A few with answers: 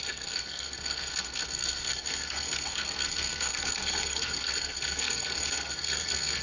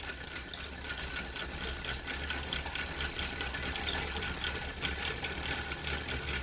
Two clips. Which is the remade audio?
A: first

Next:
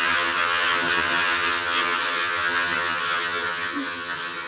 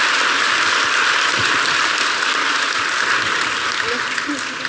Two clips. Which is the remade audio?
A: first